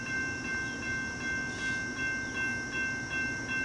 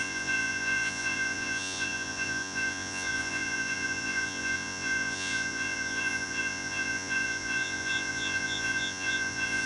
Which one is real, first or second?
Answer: first